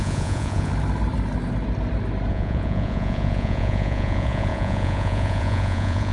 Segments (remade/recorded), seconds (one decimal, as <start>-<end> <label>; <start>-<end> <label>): 0.0-0.7 remade; 0.7-2.3 recorded; 2.3-6.1 remade